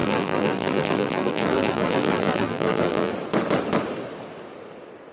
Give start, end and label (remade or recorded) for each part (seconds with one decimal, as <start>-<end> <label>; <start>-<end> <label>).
0.0-3.1 remade; 3.1-5.1 recorded